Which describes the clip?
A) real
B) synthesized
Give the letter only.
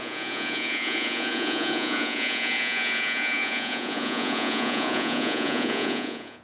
B